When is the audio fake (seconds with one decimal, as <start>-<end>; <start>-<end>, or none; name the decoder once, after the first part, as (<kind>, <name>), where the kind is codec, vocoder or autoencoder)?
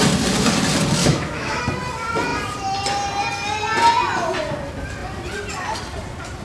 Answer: 1.0-1.6 (autoencoder, DAC-VAE)